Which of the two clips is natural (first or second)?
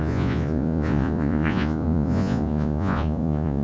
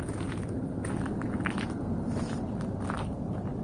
second